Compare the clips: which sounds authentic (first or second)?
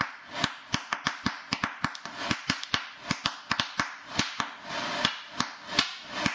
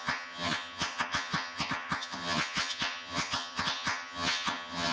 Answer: first